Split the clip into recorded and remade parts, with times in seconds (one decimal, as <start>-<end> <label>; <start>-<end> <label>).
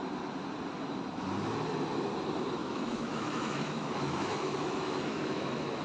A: 0.0-2.6 recorded; 2.6-5.8 remade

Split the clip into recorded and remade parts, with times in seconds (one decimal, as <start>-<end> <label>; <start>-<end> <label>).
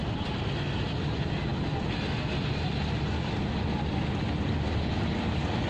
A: 0.0-5.7 recorded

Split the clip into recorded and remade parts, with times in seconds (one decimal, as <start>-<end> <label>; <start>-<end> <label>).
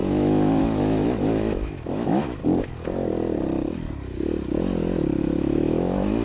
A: 0.0-2.4 remade; 2.4-5.2 recorded; 5.2-6.2 remade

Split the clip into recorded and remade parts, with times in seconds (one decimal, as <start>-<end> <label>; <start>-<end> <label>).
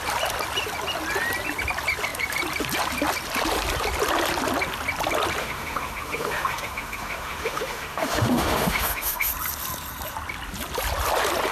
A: 0.0-5.4 recorded; 5.4-9.3 remade; 9.3-11.5 recorded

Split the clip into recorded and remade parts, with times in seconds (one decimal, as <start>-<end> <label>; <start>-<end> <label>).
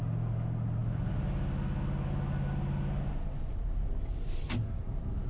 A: 0.0-5.3 recorded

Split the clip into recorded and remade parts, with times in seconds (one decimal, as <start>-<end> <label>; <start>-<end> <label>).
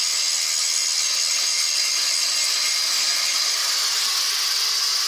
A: 0.0-5.1 recorded